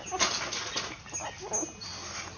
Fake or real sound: real